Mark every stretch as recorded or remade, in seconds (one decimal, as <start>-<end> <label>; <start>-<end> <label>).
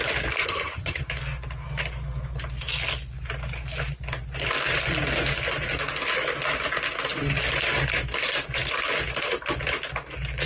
0.0-0.4 recorded; 0.4-1.0 remade; 1.0-10.5 recorded